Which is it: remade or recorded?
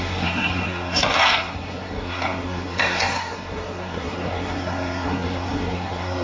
remade